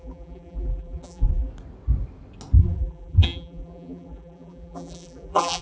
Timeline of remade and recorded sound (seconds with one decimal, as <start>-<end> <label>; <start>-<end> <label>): 0.0-1.5 remade; 1.5-2.6 recorded; 2.6-5.6 remade